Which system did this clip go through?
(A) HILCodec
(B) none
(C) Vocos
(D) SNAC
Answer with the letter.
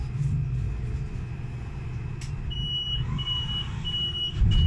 B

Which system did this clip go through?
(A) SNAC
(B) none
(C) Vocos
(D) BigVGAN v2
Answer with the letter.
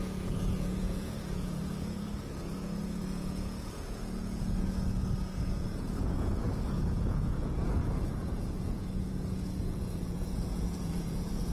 C